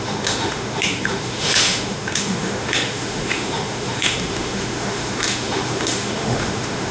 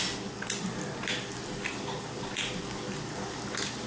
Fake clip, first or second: first